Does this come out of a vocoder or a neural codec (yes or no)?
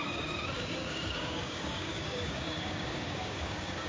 yes